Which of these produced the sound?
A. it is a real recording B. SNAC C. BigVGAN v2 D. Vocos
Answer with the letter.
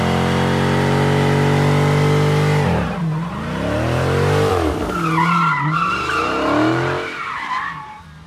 A